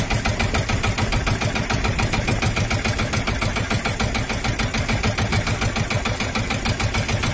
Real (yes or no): yes